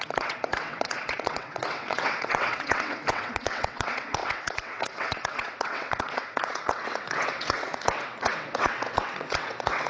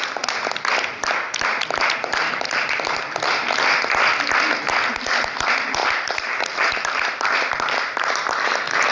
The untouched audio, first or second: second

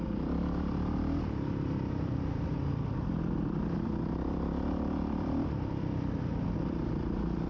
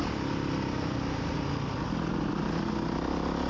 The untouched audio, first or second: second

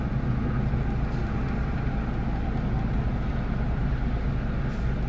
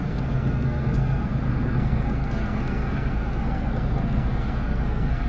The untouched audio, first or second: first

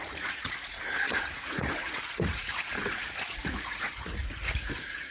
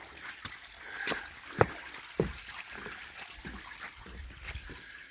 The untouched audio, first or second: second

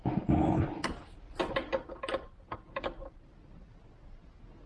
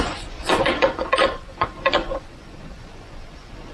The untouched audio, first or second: first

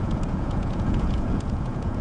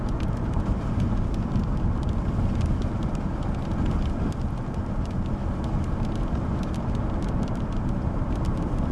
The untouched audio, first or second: second